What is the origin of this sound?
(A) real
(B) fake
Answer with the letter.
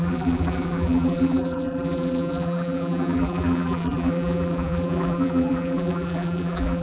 B